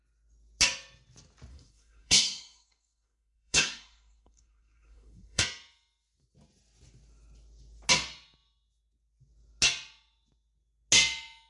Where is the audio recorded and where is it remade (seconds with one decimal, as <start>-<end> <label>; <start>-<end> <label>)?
0.0-1.5 recorded; 1.5-5.4 remade; 5.4-11.5 recorded